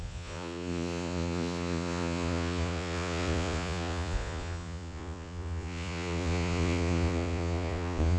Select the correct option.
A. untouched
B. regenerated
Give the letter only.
B